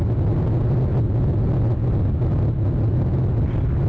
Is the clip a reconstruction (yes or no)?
no